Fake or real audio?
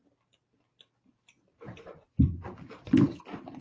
fake